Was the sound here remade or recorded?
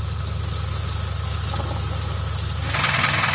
recorded